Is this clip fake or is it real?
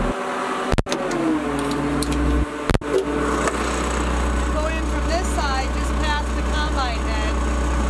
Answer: real